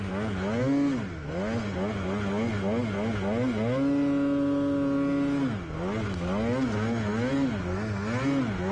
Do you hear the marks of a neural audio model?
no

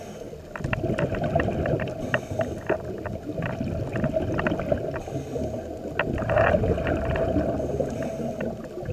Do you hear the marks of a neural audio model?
no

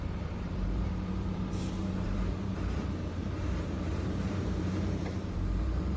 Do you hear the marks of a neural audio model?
yes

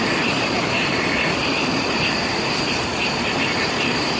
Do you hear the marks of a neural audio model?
yes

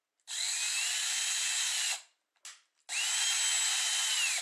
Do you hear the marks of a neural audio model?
no